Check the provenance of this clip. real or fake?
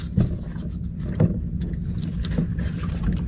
real